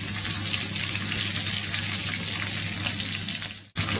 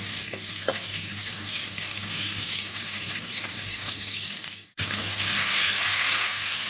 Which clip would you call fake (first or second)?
second